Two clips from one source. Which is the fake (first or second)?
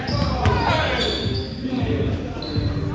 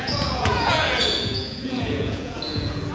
second